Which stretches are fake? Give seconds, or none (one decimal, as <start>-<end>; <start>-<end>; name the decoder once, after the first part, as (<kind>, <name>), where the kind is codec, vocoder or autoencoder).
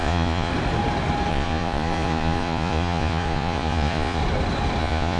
0.0-0.5 (vocoder, Vocos); 1.3-4.2; 4.8-5.2